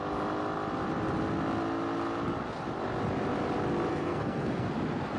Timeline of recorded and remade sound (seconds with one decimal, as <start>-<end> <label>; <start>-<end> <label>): 0.0-3.9 recorded; 3.9-4.7 remade; 4.7-5.2 recorded